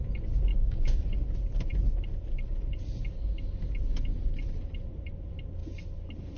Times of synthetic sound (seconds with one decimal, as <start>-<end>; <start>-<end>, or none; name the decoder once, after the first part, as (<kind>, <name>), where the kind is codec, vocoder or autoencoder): 0.5-1.0 (codec, DAC)